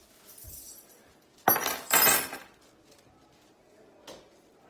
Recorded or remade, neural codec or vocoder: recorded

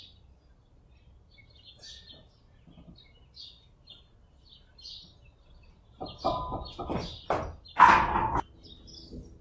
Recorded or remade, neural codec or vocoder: recorded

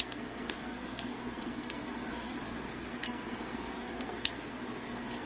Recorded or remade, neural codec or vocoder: remade, codec, SNAC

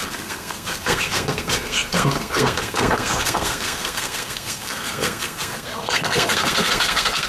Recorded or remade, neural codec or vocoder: remade, codec, SNAC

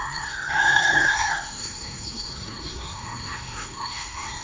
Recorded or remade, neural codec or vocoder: remade, codec, SNAC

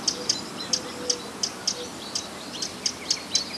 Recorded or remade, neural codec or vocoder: recorded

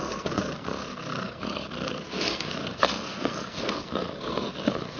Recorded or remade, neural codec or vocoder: remade, codec, SNAC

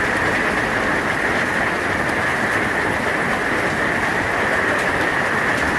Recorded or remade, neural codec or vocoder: recorded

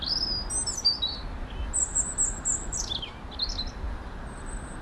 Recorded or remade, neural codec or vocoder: recorded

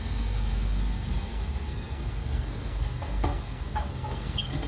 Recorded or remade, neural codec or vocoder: remade, codec, SNAC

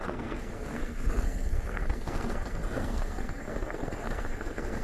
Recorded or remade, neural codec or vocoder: remade, codec, SNAC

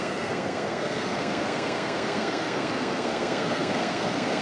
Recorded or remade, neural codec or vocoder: remade, codec, SNAC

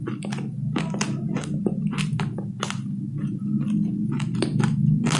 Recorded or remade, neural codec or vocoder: recorded